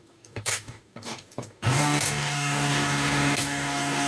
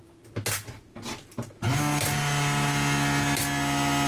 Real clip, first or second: second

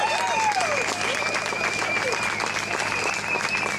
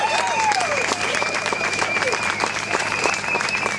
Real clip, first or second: first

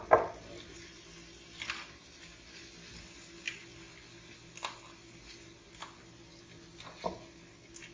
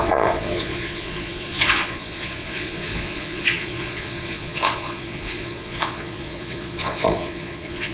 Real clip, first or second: first